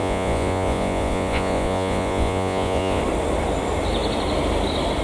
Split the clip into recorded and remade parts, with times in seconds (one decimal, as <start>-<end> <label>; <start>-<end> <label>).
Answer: 0.0-3.0 remade; 3.0-5.0 recorded